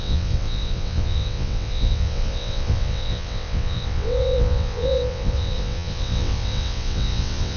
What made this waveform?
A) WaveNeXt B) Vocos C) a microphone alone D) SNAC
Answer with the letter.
A